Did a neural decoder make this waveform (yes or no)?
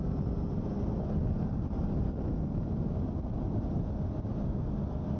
no